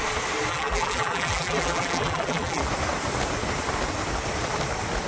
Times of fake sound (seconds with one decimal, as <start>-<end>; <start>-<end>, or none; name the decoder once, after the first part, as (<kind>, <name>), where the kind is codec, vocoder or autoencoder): 0.5-2.6 (vocoder, BigVGAN v2)